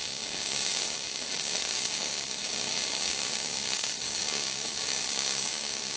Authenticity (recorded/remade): remade